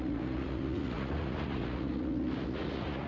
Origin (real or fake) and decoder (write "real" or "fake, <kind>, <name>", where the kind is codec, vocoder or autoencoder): fake, vocoder, Vocos